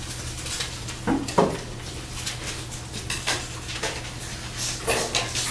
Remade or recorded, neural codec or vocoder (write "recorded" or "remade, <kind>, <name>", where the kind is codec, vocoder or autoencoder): recorded